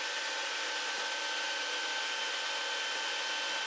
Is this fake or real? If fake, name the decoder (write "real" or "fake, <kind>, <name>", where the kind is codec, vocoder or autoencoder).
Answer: real